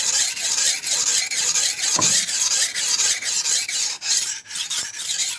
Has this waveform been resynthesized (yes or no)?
yes